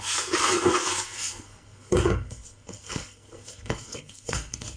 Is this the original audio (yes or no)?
no